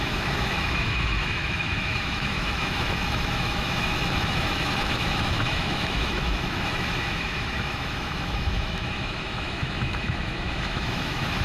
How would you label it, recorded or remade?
remade